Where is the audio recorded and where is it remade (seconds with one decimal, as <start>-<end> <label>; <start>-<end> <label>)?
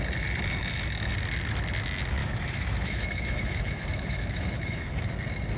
0.0-2.2 recorded; 2.2-5.0 remade; 5.0-5.6 recorded